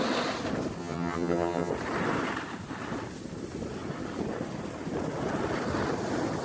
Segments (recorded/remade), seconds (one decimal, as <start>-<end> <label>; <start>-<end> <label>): 0.0-0.8 recorded; 0.8-1.7 remade; 1.7-6.4 recorded